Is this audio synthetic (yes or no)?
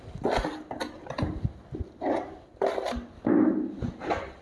no